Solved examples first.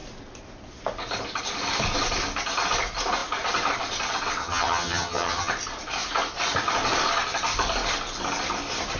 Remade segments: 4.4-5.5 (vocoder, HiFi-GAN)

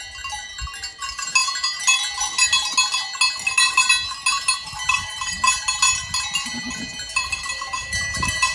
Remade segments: none

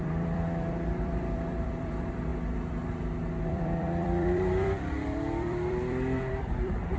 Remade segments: 0.0-2.3 (vocoder, BigVGAN v2); 3.4-7.0

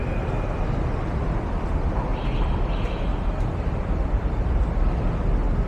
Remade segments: 2.1-4.2 (vocoder, BigVGAN v2)

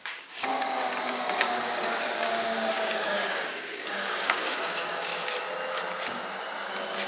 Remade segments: 0.0-5.1 (codec, DAC)

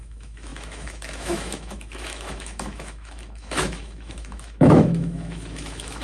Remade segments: 0.0-6.0 (autoencoder, DAC-VAE)